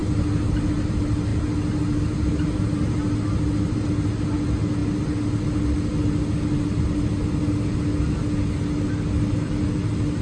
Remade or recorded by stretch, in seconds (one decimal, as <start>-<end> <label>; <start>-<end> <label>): 0.0-10.2 recorded